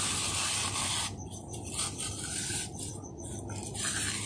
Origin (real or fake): real